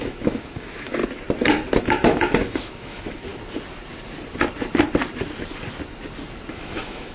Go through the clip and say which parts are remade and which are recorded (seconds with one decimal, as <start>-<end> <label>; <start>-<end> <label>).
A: 0.0-1.0 remade; 1.0-1.8 recorded; 1.8-3.3 remade; 3.3-6.5 recorded; 6.5-7.1 remade